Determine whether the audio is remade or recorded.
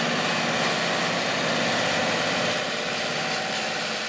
recorded